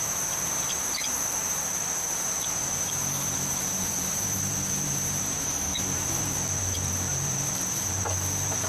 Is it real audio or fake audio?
fake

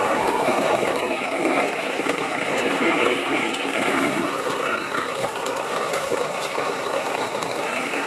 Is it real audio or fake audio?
fake